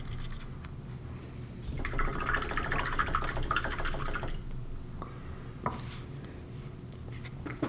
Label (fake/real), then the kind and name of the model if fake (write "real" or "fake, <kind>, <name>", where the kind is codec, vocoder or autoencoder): real